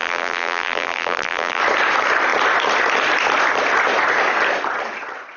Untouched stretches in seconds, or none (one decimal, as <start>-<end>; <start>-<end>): 1.6-5.4